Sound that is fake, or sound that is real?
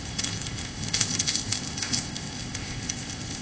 fake